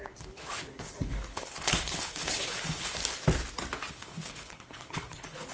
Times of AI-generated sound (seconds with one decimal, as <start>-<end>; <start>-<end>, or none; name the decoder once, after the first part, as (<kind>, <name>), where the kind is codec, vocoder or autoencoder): 0.0-3.0 (codec, HILCodec); 3.9-5.5